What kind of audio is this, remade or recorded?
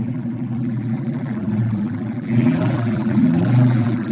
remade